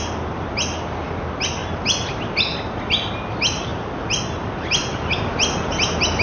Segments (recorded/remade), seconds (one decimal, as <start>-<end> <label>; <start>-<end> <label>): 0.0-6.2 recorded